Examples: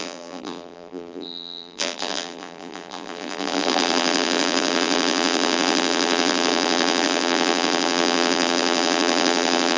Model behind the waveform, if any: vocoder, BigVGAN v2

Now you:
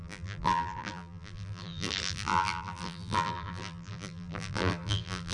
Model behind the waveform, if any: vocoder, BigVGAN v2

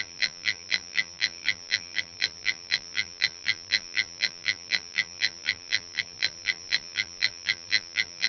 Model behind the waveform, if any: vocoder, BigVGAN v2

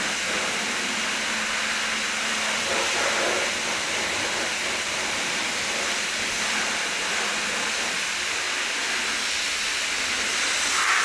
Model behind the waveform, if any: none